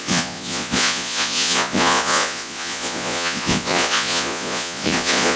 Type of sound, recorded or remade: remade